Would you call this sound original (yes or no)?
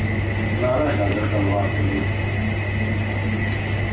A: yes